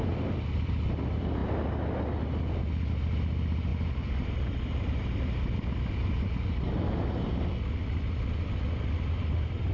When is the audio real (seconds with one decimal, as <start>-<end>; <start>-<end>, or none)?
0.0-9.7